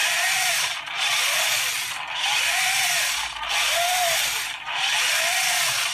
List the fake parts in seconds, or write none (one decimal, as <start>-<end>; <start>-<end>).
none